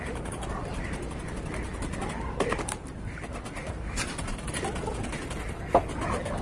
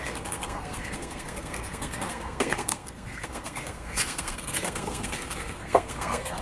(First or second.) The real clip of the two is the first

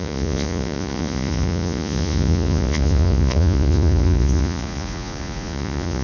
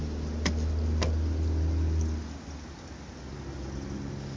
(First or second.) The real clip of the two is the second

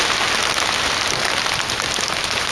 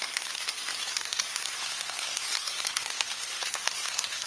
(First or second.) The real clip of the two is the first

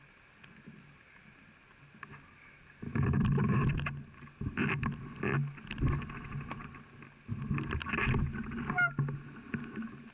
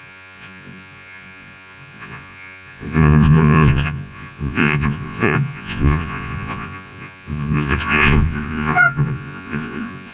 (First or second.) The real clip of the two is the first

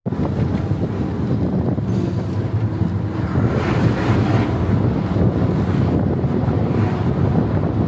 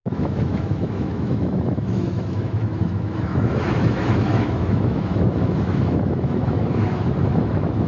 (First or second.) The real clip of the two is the first